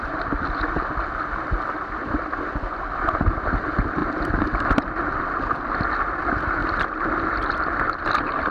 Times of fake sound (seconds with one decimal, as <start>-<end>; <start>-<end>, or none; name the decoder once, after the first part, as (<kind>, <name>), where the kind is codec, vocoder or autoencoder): 4.0-4.5 (vocoder, BigVGAN v2); 6.6-8.5